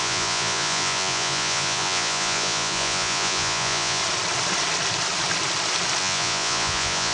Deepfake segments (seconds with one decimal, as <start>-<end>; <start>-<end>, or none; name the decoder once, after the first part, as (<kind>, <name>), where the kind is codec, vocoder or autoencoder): 0.0-4.0 (vocoder, Vocos); 6.0-7.1